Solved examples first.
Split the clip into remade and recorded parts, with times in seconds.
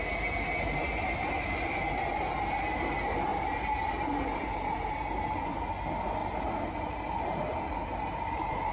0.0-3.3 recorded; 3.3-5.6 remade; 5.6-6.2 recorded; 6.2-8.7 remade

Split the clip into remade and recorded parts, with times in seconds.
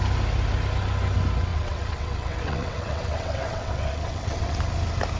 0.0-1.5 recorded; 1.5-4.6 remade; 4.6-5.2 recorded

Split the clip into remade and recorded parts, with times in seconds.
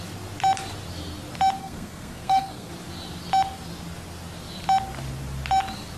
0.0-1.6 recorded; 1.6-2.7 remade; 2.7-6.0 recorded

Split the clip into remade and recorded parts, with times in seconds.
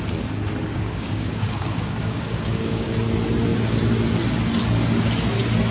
0.0-0.7 recorded; 0.7-2.9 remade; 2.9-5.7 recorded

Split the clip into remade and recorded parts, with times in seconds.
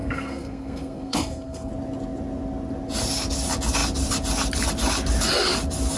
0.0-1.7 remade; 1.7-6.0 recorded